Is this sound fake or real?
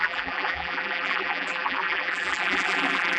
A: fake